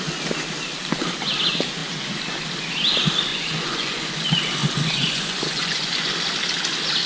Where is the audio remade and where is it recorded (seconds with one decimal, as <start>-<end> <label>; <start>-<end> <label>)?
0.0-3.3 recorded; 3.3-4.1 remade; 4.1-4.6 recorded; 4.6-6.1 remade; 6.1-7.1 recorded